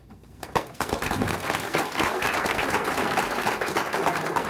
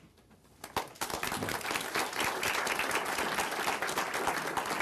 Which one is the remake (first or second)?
first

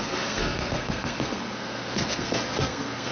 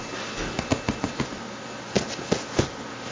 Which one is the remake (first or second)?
first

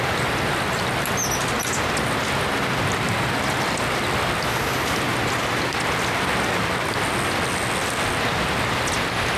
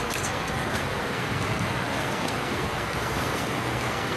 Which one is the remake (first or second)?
second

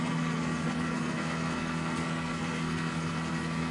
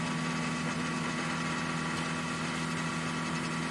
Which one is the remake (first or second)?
first